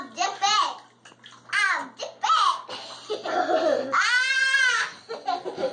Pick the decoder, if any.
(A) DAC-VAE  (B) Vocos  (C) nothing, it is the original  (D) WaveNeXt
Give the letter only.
C